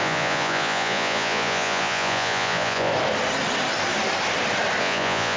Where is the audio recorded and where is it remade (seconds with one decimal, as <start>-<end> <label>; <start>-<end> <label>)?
0.0-2.9 remade; 2.9-4.8 recorded; 4.8-5.4 remade